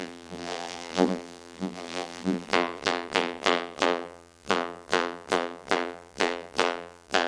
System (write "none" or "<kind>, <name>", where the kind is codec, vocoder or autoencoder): vocoder, BigVGAN v2